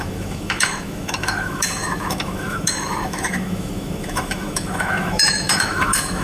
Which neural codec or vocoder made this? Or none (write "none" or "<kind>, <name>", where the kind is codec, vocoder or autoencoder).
autoencoder, DAC-VAE